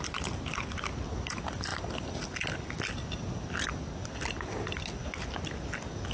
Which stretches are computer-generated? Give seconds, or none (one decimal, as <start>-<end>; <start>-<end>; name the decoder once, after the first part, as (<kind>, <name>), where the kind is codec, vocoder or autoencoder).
none